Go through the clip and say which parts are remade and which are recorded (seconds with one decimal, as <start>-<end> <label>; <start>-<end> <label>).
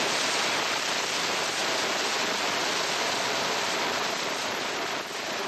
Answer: 0.0-4.0 recorded; 4.0-5.5 remade